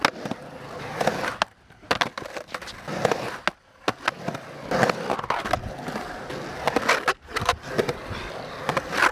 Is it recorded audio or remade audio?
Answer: recorded